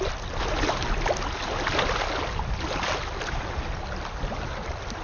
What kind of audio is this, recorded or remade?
recorded